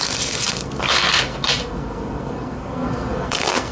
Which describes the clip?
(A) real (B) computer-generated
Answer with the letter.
B